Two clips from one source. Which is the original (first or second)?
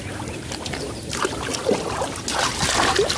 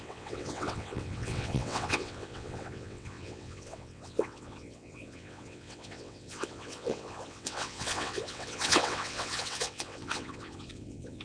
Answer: first